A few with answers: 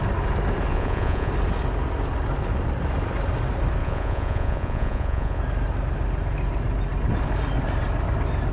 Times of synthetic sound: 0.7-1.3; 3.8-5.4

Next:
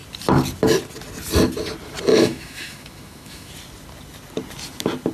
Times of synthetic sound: 2.1-3.5

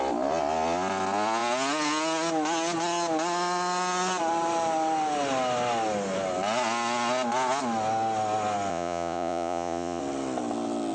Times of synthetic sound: 8.7-10.0

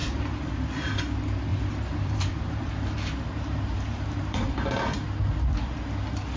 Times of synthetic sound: 0.0-1.0; 1.5-4.4

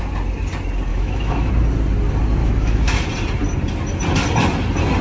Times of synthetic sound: 0.9-1.5; 2.4-3.1